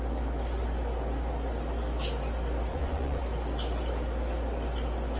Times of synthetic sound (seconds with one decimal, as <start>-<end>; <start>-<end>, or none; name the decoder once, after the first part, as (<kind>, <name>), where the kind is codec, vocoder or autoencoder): 2.7-3.2 (vocoder, Vocos)